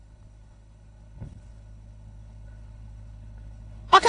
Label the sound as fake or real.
fake